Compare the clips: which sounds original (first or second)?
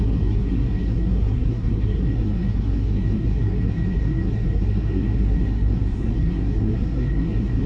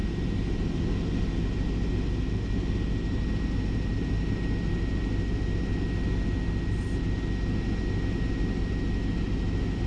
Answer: second